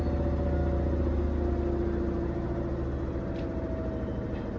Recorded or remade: recorded